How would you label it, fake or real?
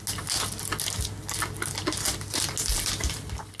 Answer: real